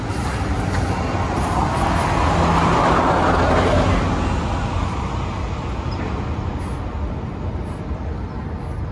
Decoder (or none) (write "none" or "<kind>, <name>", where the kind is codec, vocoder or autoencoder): none